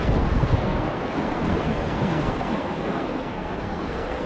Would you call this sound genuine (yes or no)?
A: no